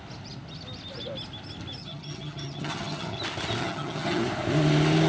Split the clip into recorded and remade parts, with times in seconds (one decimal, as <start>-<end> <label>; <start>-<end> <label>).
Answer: 0.0-1.8 recorded; 1.8-3.2 remade; 3.2-3.6 recorded; 3.6-4.2 remade; 4.2-5.1 recorded